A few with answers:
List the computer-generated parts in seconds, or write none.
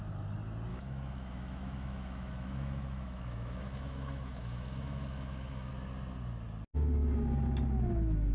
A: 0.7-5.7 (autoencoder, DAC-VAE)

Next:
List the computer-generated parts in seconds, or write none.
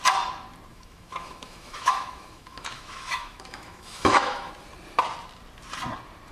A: 0.7-4.5 (autoencoder, DAC-VAE)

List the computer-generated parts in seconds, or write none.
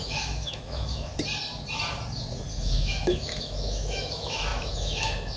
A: 0.0-1.1 (autoencoder, DAC-VAE); 2.5-5.4